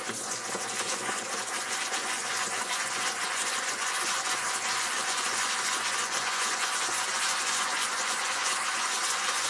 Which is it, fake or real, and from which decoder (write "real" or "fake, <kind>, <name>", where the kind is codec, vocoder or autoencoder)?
fake, vocoder, Vocos